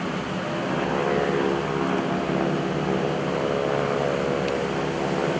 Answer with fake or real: real